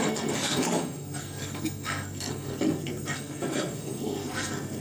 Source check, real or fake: fake